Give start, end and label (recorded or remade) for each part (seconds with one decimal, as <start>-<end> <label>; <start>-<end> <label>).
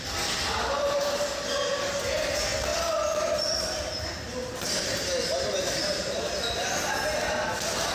0.0-7.9 recorded